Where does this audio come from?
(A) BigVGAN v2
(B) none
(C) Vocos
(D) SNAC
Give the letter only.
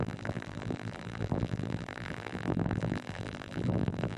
A